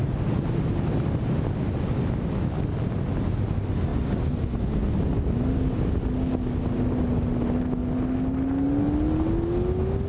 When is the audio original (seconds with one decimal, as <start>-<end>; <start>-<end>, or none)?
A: 0.0-10.1